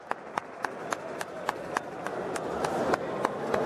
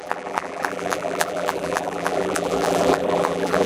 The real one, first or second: first